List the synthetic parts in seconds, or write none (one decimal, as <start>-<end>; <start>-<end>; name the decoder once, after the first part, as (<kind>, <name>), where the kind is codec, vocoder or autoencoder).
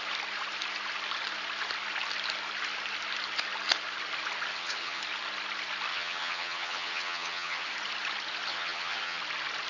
4.5-5.0 (vocoder, HiFi-GAN); 5.9-7.7; 8.5-9.2